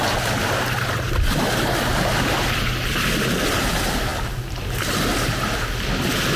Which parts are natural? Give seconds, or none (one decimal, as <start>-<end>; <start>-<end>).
0.0-1.9; 4.1-6.4